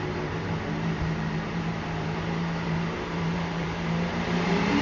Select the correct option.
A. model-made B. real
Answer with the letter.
A